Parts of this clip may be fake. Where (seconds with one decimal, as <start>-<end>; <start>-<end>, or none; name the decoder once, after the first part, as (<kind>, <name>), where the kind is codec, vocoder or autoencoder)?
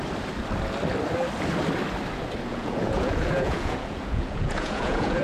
2.5-5.2 (vocoder, Vocos)